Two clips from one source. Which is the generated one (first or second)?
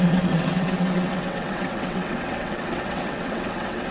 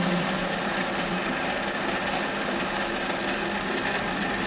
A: first